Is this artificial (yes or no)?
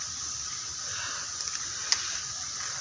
no